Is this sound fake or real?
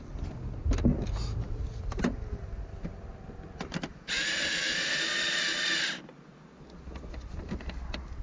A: real